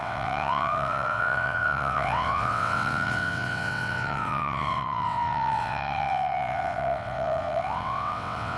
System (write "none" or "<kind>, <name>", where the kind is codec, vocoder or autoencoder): vocoder, WaveNeXt